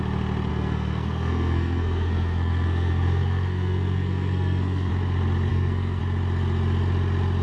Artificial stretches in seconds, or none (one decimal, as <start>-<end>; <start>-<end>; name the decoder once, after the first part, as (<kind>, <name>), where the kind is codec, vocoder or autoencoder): 0.5-4.9 (codec, SNAC); 5.5-6.0